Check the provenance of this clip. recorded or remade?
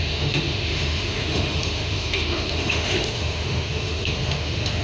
remade